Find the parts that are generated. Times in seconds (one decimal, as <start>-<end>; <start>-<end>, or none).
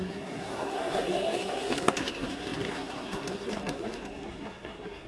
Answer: 0.0-5.1